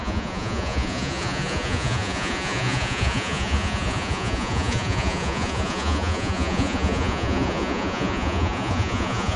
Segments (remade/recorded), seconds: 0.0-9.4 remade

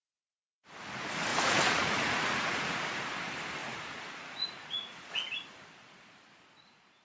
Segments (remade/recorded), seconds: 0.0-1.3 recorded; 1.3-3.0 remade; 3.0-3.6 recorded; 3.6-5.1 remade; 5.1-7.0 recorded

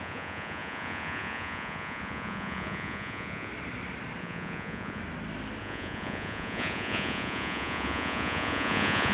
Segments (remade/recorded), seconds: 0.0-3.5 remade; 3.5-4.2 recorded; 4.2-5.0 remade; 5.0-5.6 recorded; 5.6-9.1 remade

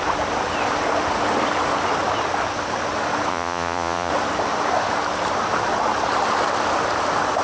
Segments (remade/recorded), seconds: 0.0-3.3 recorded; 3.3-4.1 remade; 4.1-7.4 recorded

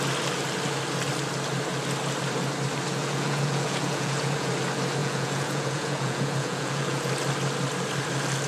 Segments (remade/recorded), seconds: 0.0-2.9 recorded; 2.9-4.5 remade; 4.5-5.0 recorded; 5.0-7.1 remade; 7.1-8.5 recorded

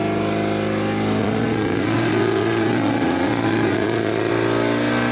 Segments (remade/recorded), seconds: 0.0-1.2 recorded; 1.2-4.3 remade; 4.3-5.1 recorded

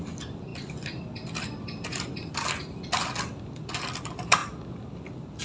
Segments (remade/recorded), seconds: 0.0-5.4 recorded